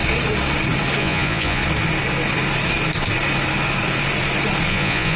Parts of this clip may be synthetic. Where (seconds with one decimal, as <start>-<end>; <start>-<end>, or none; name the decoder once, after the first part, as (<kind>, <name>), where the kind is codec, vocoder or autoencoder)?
1.0-1.6 (vocoder, Vocos); 4.7-5.2